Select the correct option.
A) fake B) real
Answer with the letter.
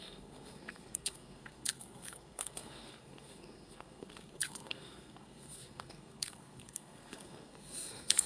A